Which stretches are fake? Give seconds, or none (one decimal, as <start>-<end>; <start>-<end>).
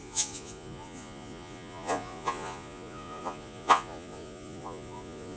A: 0.0-5.4